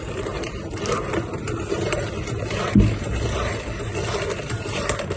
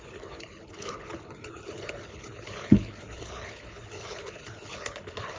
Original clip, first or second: first